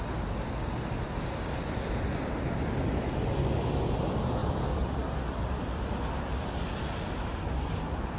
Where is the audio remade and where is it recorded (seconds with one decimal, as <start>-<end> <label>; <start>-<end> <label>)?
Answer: 0.0-8.2 recorded